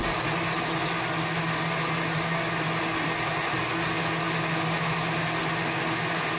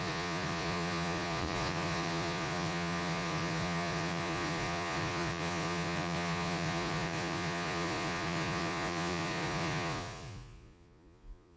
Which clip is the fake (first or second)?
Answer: second